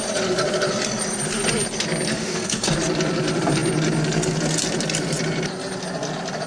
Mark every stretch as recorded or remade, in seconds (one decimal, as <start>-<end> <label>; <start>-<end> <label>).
0.0-2.1 recorded; 2.1-2.7 remade; 2.7-6.5 recorded

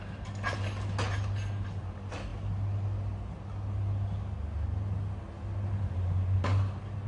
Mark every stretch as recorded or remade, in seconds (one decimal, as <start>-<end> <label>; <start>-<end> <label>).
0.0-7.1 recorded